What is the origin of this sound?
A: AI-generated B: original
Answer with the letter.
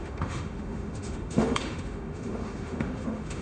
A